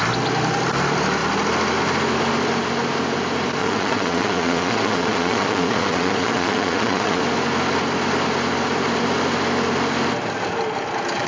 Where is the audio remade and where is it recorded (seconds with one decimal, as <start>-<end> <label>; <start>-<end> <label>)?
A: 0.0-3.6 recorded; 3.6-7.2 remade; 7.2-11.3 recorded